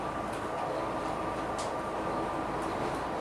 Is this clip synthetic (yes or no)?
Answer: no